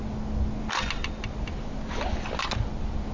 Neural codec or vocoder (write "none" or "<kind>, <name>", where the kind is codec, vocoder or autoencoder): none